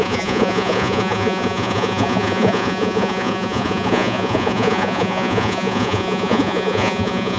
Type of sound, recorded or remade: remade